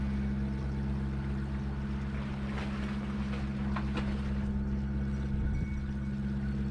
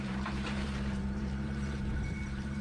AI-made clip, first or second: second